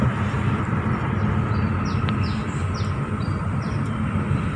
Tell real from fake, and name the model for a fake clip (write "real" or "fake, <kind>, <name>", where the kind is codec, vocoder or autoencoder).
fake, vocoder, BigVGAN v2